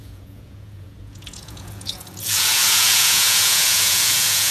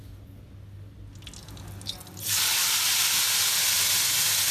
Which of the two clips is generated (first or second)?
first